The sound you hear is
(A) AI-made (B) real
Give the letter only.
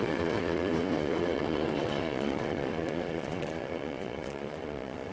A